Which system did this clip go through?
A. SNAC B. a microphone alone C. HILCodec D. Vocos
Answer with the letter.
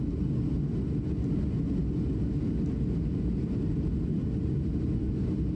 B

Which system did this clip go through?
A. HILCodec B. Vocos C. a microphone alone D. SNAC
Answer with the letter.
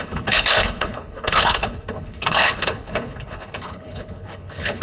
A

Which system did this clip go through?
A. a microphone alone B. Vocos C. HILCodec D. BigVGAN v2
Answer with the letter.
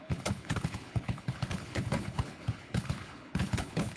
C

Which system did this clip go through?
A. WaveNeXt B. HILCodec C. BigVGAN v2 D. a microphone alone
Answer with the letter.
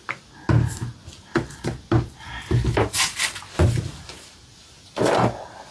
D